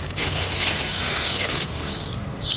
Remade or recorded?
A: remade